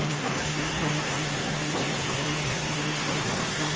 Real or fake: fake